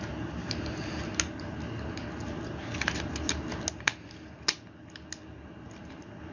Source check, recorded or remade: recorded